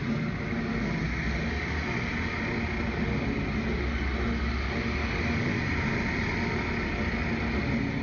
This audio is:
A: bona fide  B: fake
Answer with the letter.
A